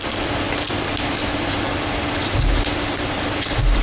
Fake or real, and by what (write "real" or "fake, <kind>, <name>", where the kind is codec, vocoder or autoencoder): real